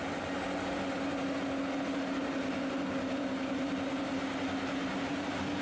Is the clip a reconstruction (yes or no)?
no